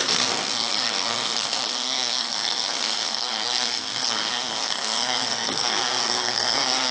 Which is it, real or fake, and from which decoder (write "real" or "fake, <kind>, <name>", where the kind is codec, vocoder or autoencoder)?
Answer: fake, codec, SNAC